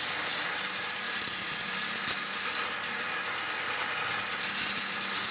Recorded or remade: recorded